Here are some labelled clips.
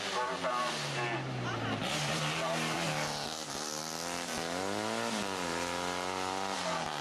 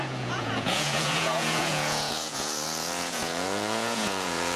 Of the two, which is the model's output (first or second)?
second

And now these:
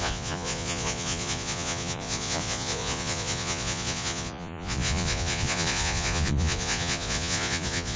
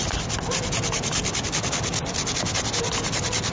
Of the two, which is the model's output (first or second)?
first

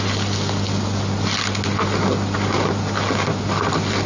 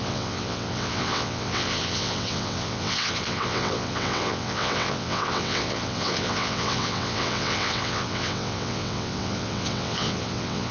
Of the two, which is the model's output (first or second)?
second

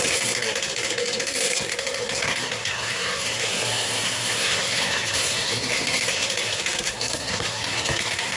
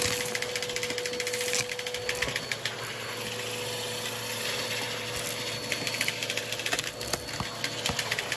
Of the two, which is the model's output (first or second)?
first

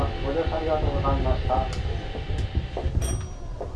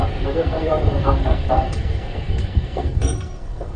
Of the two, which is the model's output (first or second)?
second